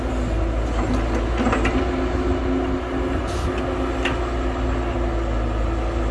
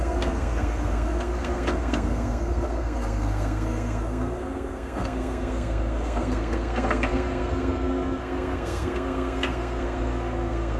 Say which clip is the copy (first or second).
second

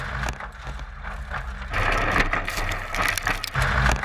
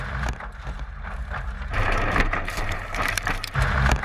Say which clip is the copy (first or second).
second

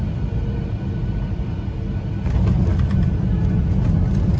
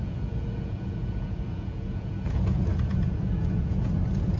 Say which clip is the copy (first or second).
second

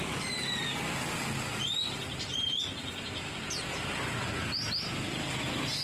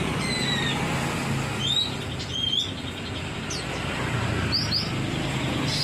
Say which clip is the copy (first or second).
first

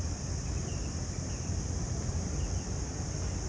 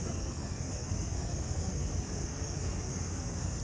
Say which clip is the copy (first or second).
second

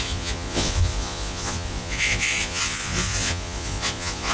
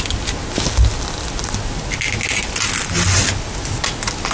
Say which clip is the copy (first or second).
first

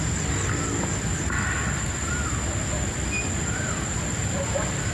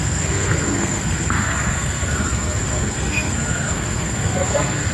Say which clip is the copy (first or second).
second